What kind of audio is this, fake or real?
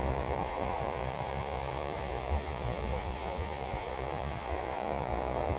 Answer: fake